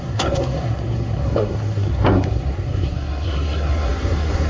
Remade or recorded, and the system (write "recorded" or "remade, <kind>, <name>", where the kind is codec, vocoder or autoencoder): remade, codec, SNAC